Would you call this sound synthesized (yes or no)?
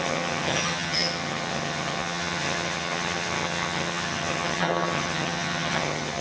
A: yes